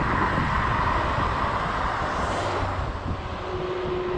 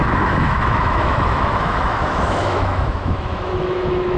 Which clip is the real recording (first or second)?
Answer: first